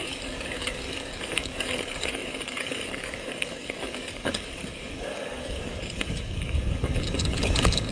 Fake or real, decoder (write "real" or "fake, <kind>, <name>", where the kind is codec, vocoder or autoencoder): fake, codec, DAC